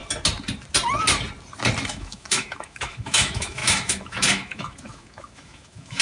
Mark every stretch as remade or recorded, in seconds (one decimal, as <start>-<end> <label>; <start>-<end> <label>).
0.0-1.9 recorded; 1.9-6.0 remade